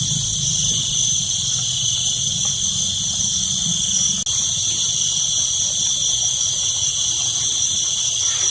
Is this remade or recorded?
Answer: recorded